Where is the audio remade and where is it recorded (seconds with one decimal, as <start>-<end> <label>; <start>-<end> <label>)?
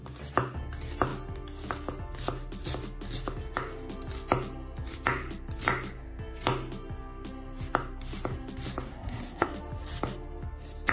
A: 0.0-8.9 recorded; 8.9-9.5 remade; 9.5-10.9 recorded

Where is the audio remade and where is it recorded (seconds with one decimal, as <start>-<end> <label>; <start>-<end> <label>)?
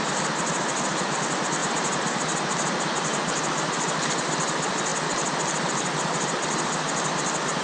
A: 0.0-1.6 recorded; 1.6-2.2 remade; 2.2-7.6 recorded